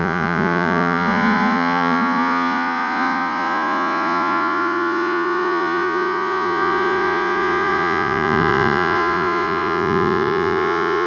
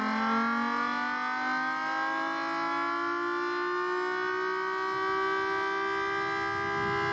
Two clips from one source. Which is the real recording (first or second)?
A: second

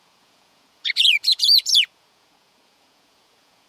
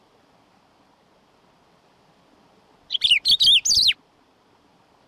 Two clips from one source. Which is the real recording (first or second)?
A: second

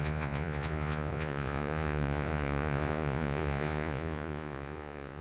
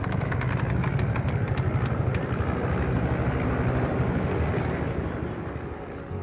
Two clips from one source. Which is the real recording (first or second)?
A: second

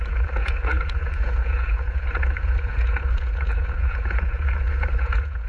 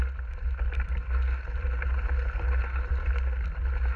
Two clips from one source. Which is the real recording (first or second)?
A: second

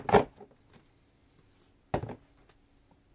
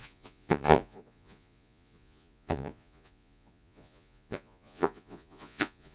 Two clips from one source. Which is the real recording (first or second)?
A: first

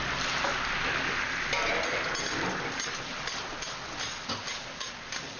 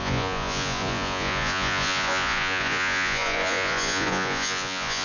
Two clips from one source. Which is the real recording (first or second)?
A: first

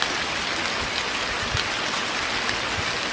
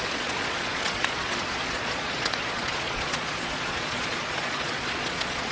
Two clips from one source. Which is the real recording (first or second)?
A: first